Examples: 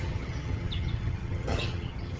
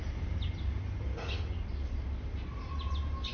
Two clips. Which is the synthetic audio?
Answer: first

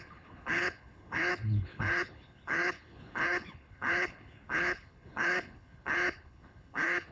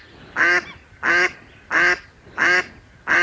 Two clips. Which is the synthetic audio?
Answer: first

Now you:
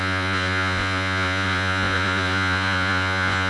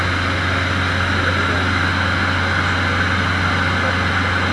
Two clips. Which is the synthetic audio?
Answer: first